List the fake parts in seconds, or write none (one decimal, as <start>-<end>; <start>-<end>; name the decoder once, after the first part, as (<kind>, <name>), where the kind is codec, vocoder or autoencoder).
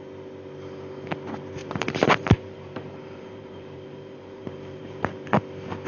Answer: 1.6-5.1 (vocoder, BigVGAN v2)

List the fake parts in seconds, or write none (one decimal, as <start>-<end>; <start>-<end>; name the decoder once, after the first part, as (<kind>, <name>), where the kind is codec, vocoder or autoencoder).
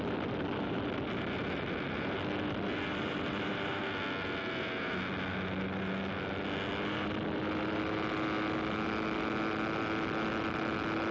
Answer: 2.9-3.8 (vocoder, BigVGAN v2)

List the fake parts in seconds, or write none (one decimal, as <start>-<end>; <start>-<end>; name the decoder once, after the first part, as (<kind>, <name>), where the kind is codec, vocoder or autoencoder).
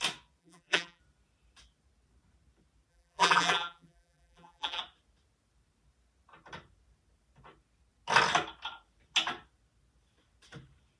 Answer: 0.4-1.0 (vocoder, BigVGAN v2); 2.9-4.8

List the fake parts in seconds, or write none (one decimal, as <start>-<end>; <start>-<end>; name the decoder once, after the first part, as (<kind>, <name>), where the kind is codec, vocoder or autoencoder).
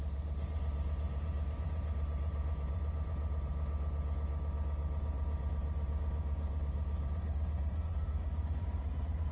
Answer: 0.0-3.5 (vocoder, BigVGAN v2); 5.0-9.3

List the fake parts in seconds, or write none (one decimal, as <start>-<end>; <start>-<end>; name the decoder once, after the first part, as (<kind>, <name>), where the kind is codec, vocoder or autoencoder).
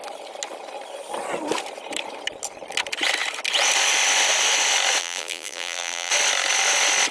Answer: 5.0-6.1 (vocoder, BigVGAN v2)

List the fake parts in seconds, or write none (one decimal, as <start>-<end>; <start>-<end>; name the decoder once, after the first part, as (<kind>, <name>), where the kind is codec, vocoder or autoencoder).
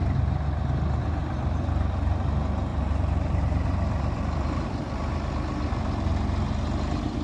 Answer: 1.2-1.7 (vocoder, BigVGAN v2); 2.7-6.1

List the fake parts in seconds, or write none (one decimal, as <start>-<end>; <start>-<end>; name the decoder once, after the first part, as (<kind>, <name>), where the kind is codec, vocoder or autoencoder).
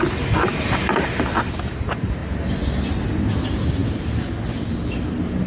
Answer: none